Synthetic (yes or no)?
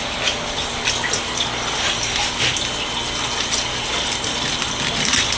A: no